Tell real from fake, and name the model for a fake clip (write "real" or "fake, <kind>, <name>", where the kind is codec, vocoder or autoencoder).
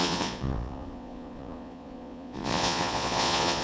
fake, vocoder, Vocos